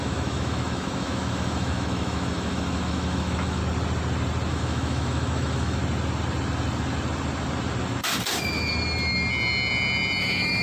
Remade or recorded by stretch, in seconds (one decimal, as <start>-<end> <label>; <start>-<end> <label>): 0.0-3.6 remade; 3.6-4.5 recorded; 4.5-5.8 remade; 5.8-10.2 recorded; 10.2-10.6 remade